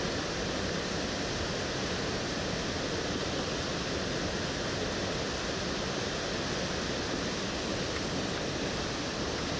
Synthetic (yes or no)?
no